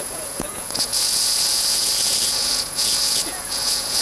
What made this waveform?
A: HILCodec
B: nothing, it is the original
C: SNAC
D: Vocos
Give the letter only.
D